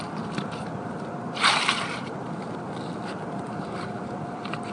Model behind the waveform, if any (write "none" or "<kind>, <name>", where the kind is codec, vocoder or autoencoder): vocoder, BigVGAN v2